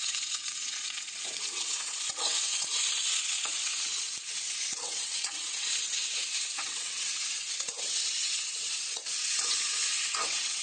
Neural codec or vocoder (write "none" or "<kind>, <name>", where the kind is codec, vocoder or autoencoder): vocoder, WaveNeXt